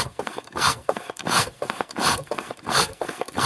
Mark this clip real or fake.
fake